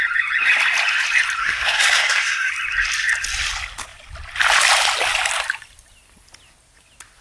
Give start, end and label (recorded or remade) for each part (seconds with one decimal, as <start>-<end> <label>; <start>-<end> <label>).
0.0-1.4 recorded; 1.4-2.5 remade; 2.5-7.2 recorded